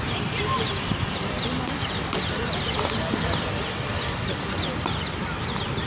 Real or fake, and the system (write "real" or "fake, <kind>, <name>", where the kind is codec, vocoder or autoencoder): fake, vocoder, BigVGAN v2